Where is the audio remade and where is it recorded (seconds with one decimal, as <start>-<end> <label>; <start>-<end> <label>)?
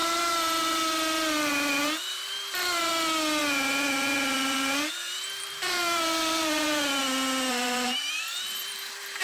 0.0-2.9 remade; 2.9-3.4 recorded; 3.4-7.0 remade; 7.0-7.5 recorded; 7.5-9.2 remade